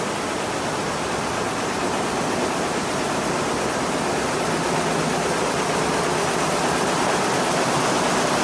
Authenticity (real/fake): real